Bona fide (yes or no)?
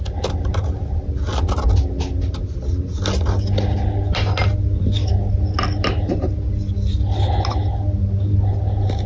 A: yes